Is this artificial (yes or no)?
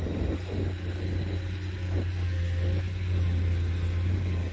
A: no